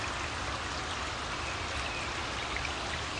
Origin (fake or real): real